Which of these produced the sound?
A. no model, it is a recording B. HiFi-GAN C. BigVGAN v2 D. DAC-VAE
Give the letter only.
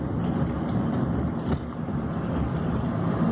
A